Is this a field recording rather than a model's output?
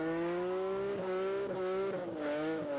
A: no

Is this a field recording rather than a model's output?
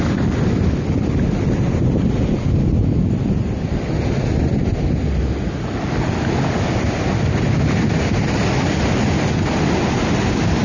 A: yes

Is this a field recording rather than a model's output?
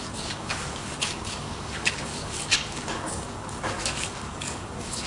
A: no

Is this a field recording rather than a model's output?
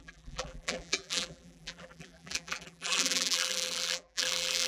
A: no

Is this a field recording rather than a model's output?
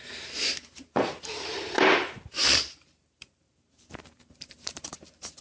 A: no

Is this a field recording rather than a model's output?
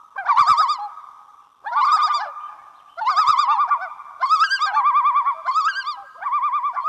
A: yes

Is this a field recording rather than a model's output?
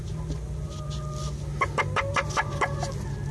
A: yes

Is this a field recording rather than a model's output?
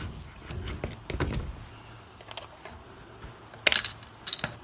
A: yes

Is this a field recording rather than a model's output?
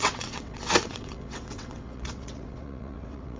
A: no